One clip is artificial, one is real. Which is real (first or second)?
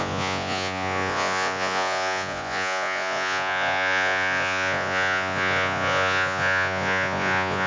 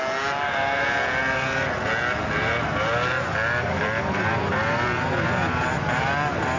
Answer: second